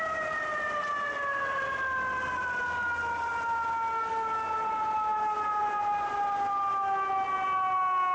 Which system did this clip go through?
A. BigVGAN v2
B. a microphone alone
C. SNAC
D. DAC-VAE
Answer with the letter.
B